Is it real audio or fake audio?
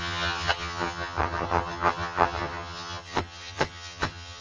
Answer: fake